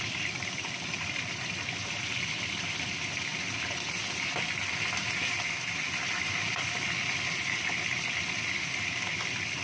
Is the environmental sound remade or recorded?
recorded